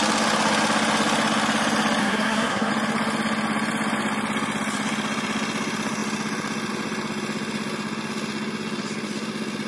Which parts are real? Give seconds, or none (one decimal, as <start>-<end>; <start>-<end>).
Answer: 0.0-2.0; 2.7-9.7